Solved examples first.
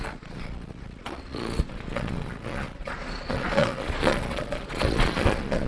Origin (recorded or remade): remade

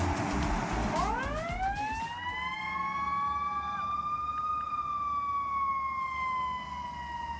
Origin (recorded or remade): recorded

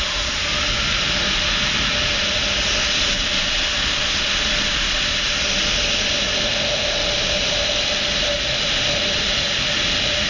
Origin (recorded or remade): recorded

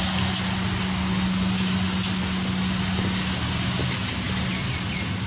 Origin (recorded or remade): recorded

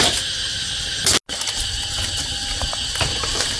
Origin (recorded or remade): recorded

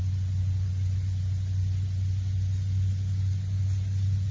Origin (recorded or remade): recorded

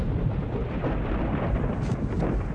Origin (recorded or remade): recorded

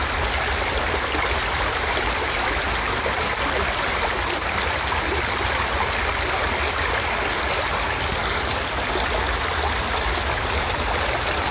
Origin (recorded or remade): recorded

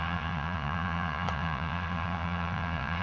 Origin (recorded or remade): remade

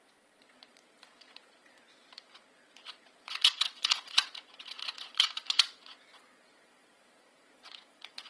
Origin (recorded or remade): remade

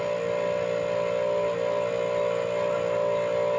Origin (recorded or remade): recorded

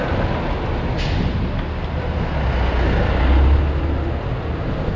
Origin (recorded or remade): recorded